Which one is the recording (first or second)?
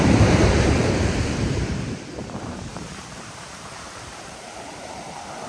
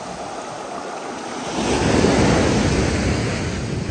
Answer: second